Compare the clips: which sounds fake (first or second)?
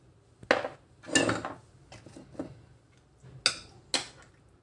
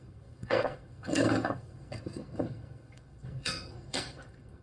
second